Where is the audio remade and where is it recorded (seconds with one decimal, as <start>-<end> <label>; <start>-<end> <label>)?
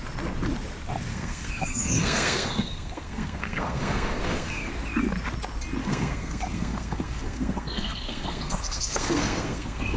0.0-1.1 recorded; 1.1-4.7 remade; 4.7-5.8 recorded; 5.8-10.0 remade